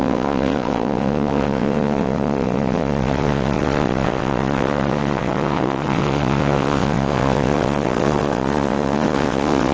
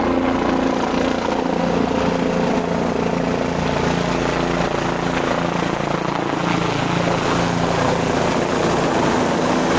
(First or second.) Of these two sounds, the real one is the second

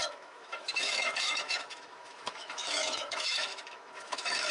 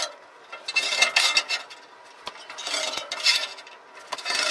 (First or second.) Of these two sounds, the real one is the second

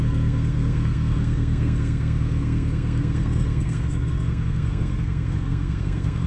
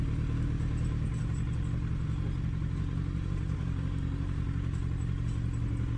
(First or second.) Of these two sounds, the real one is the second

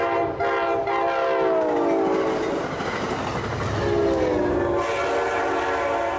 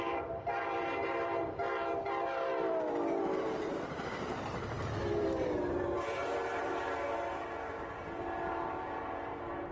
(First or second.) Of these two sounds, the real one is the first